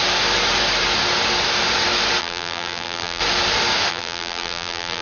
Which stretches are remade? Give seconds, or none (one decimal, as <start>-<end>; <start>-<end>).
2.2-3.2; 3.9-5.0